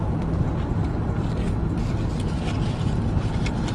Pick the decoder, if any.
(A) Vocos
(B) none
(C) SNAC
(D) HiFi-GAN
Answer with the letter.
B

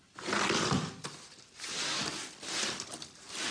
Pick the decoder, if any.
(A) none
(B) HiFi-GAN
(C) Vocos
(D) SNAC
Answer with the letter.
A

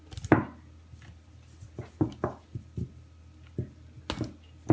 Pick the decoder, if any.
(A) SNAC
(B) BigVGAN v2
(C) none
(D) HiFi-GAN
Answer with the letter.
C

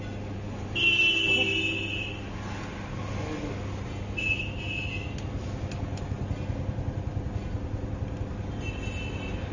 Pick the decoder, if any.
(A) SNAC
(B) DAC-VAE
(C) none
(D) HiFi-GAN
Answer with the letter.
C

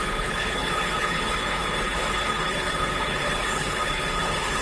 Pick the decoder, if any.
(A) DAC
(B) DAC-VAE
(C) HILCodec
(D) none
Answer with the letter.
C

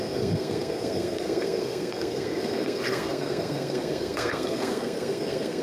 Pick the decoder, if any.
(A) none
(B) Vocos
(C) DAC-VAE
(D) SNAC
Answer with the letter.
D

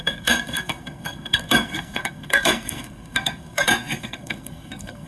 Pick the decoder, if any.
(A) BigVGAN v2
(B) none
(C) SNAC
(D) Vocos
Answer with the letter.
C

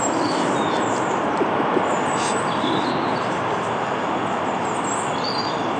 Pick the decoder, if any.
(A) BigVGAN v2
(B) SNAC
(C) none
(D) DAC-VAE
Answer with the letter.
C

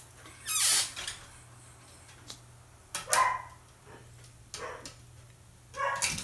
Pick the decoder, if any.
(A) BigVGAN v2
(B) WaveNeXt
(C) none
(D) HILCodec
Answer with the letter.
C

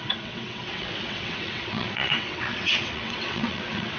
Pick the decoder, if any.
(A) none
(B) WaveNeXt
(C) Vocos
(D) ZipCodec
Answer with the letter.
B